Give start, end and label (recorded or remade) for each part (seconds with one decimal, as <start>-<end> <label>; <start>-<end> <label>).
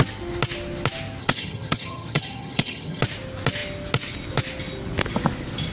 0.0-1.2 recorded; 1.2-3.0 remade; 3.0-5.7 recorded